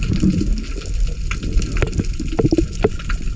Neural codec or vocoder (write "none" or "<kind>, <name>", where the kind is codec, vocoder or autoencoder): none